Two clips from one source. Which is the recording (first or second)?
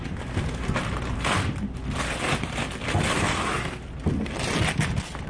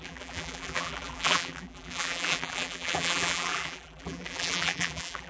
first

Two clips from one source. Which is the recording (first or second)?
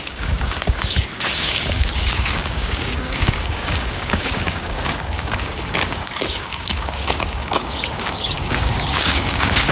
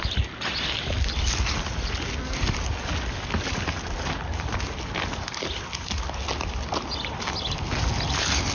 second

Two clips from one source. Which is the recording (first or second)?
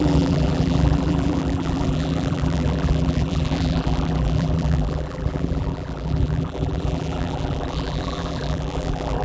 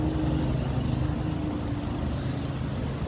second